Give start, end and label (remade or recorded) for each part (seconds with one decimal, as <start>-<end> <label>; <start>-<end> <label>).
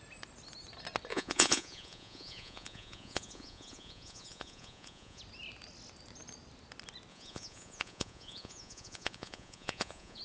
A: 0.0-1.1 recorded; 1.1-5.2 remade; 5.2-7.1 recorded; 7.1-10.2 remade